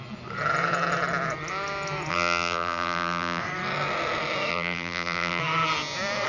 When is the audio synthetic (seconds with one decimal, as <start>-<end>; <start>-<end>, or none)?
2.1-3.4; 4.5-5.4